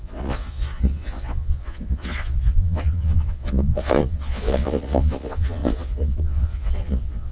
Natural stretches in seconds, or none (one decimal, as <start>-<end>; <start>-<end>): none

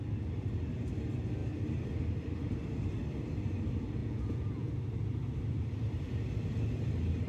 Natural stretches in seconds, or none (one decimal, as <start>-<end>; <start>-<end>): 0.0-4.0; 4.7-7.3

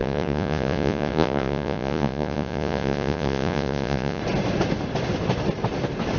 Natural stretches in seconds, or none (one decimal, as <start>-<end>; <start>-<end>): 4.2-6.2

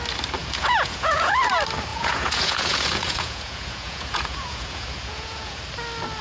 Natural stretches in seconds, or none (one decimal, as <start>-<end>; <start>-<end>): 0.0-0.4; 1.4-1.9; 5.6-6.2